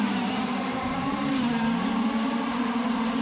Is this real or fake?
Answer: fake